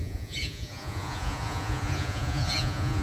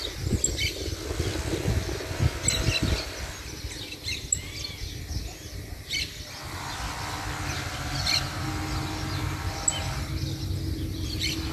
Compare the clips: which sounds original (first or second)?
second